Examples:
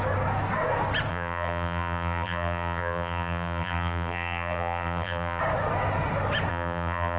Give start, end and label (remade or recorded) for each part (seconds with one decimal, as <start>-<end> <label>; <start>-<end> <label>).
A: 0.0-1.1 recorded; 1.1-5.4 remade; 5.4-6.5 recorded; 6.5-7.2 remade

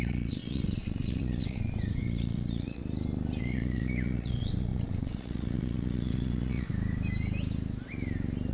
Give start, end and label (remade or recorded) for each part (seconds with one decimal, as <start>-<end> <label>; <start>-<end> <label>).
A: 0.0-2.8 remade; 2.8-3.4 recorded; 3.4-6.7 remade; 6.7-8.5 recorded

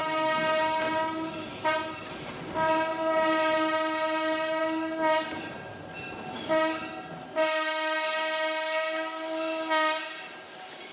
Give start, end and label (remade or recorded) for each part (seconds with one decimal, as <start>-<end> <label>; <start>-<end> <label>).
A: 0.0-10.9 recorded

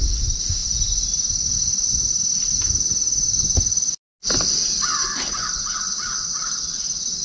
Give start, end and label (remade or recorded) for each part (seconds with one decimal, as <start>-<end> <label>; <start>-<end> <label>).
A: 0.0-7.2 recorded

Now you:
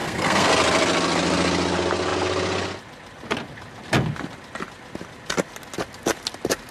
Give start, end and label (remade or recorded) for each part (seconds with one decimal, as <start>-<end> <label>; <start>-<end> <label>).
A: 0.0-0.5 remade; 0.5-6.7 recorded